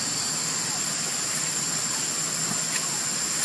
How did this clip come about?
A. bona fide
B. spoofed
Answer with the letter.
A